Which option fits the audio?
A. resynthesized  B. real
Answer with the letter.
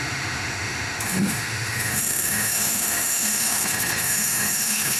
A